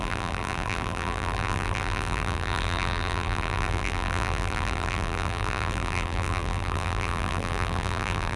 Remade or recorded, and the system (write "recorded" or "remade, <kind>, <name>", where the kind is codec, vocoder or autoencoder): remade, vocoder, BigVGAN v2